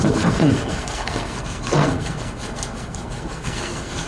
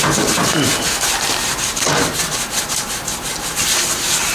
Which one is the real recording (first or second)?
second